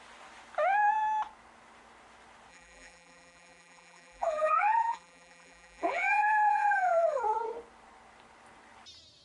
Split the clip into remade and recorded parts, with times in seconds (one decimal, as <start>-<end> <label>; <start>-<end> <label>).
0.0-2.5 recorded; 2.5-7.2 remade; 7.2-9.2 recorded